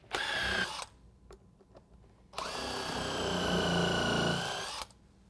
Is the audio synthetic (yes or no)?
no